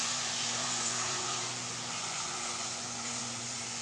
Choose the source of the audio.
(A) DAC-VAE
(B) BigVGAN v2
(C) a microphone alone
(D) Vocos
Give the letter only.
D